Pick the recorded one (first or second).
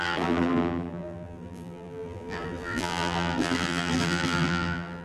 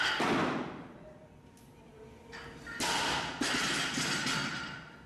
second